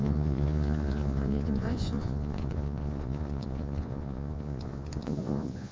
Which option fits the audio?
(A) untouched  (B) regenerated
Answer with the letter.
B